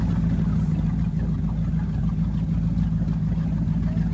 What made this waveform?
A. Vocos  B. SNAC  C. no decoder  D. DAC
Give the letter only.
C